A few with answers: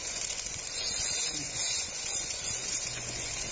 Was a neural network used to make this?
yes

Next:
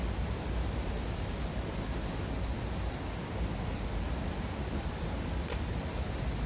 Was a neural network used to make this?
no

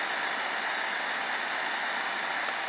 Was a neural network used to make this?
no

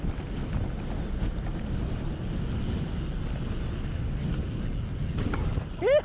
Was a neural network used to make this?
no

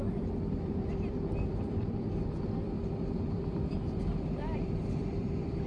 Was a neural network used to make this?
yes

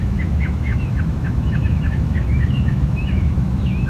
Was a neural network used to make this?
yes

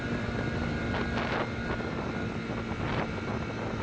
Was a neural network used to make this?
no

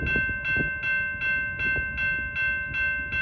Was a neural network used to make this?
no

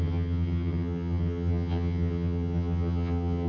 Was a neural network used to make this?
yes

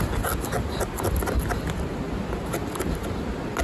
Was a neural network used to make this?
no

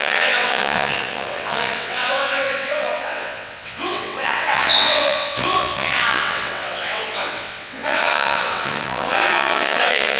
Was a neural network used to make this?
yes